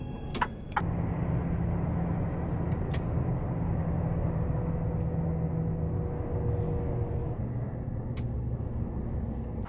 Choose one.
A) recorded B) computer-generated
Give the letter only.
A